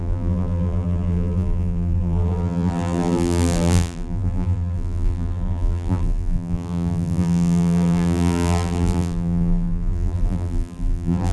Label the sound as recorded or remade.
remade